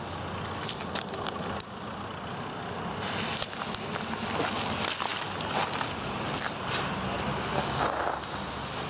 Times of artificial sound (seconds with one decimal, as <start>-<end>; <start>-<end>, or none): none